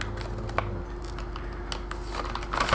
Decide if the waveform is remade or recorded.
recorded